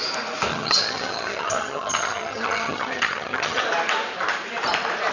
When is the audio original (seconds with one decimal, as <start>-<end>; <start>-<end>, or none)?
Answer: 0.0-0.5; 3.6-5.1